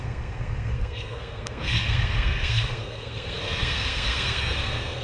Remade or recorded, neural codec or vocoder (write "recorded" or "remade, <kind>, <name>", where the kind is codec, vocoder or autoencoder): remade, codec, SNAC